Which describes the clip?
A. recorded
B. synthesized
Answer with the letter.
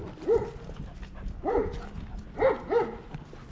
A